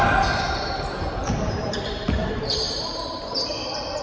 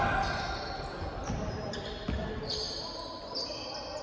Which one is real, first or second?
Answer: second